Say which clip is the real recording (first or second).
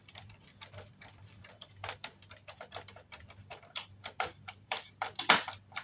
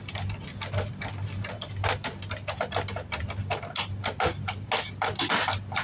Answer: second